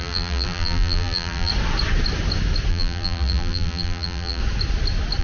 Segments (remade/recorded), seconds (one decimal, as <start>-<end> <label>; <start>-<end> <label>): 0.0-1.5 remade; 1.5-2.7 recorded; 2.7-4.4 remade; 4.4-5.2 recorded